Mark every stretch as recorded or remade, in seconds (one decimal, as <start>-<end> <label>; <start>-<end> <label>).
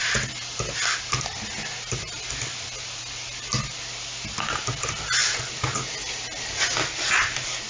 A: 0.0-7.7 recorded